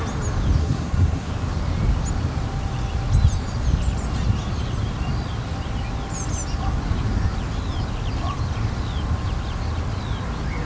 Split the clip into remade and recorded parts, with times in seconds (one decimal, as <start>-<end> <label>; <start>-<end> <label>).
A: 0.0-0.6 recorded; 0.6-1.3 remade; 1.3-10.6 recorded